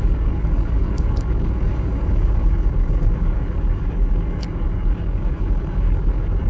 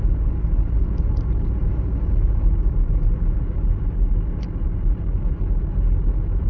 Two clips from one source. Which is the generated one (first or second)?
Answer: first